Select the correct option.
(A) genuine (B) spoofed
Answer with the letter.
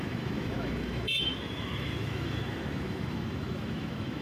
B